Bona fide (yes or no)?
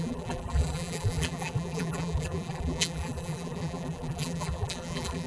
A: no